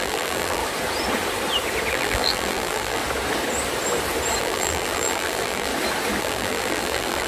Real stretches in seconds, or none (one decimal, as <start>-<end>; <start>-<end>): 0.6-1.9; 3.0-4.4; 5.7-6.2